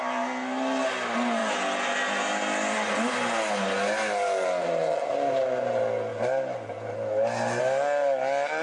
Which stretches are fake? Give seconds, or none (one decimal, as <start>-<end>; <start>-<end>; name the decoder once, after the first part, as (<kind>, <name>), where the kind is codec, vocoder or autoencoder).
none